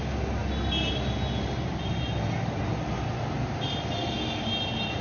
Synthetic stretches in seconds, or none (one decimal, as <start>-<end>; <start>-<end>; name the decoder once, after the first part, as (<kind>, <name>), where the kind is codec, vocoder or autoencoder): none